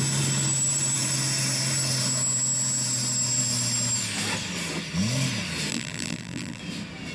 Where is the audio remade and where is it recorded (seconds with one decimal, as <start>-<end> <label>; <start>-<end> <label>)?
0.0-5.7 recorded; 5.7-6.6 remade; 6.6-7.1 recorded